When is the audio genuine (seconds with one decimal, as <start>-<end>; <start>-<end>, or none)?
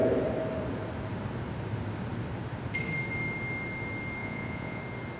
0.0-4.2; 4.8-5.2